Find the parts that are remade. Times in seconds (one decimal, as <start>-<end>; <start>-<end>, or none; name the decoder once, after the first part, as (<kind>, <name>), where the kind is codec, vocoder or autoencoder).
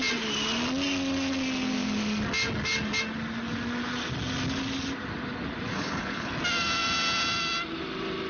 5.7-6.3 (codec, HILCodec)